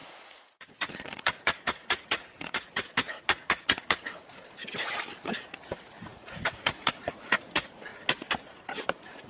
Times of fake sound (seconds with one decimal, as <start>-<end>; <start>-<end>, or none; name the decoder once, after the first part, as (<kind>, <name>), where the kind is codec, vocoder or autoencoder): 0.0-4.6 (vocoder, Vocos); 5.2-7.9; 8.5-9.3